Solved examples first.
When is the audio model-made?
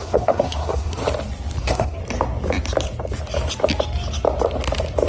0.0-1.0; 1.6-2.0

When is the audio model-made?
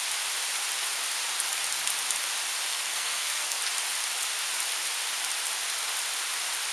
2.7-3.6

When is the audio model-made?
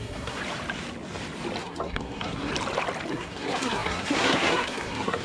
0.0-0.4; 1.6-2.5; 3.1-5.2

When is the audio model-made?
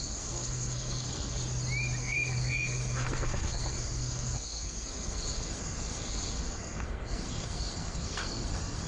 0.0-1.4; 2.0-8.9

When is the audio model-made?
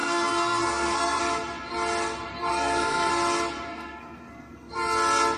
0.0-1.2; 2.5-3.1; 3.7-4.7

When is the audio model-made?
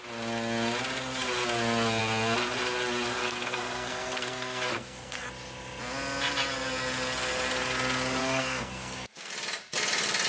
3.2-5.3; 8.2-9.3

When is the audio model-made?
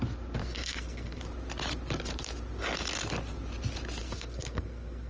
0.4-1.2; 4.0-5.1